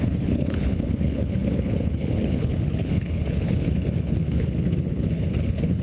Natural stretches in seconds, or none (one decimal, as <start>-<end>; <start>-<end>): none